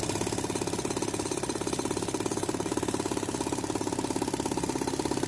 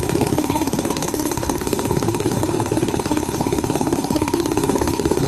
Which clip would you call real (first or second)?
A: first